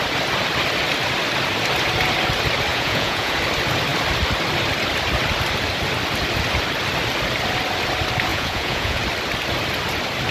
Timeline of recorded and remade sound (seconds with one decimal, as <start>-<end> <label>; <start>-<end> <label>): 0.0-2.7 recorded; 2.7-3.3 remade; 3.3-8.3 recorded; 8.3-9.0 remade; 9.0-10.3 recorded